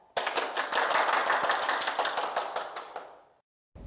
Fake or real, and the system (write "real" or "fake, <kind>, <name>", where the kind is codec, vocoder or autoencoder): real